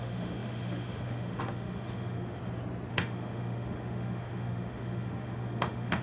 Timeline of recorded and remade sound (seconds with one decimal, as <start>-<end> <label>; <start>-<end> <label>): 0.0-2.4 remade; 2.4-2.9 recorded; 2.9-6.0 remade